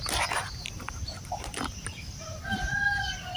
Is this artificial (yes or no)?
yes